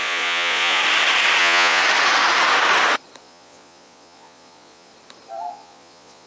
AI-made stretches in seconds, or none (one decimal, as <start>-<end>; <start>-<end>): 0.0-0.8; 1.4-1.8; 3.2-4.9; 5.5-6.3